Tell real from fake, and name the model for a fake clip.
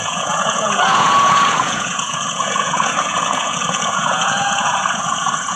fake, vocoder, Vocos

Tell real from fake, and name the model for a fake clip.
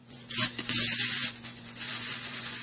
fake, vocoder, Vocos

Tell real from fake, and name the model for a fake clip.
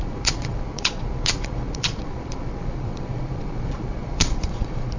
fake, vocoder, Vocos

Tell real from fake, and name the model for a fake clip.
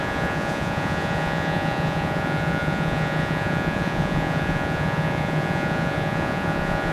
fake, vocoder, Vocos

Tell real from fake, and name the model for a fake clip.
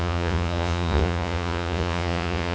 fake, vocoder, Vocos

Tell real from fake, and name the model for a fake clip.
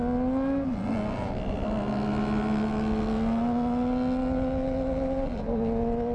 real